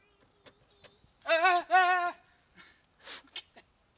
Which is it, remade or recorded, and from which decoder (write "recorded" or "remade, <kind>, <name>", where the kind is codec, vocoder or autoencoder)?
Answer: recorded